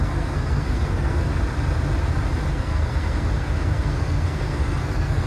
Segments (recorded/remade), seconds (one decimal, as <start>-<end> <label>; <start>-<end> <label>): 0.0-1.3 remade; 1.3-2.5 recorded; 2.5-5.3 remade